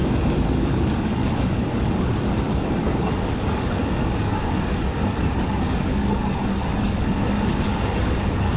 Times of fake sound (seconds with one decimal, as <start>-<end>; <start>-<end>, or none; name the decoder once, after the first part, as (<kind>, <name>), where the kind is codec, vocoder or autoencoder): 0.0-8.6 (codec, DAC)